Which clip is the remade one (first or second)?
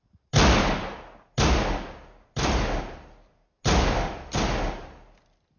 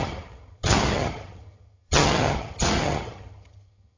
second